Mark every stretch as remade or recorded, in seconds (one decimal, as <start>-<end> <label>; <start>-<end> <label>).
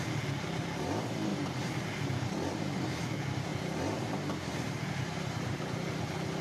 0.0-1.3 recorded; 1.3-2.6 remade; 2.6-3.5 recorded; 3.5-6.0 remade; 6.0-6.4 recorded